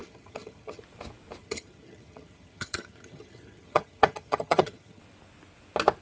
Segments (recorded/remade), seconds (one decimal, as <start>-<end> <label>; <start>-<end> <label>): 0.0-0.8 remade; 0.8-1.4 recorded; 1.4-5.0 remade; 5.0-6.0 recorded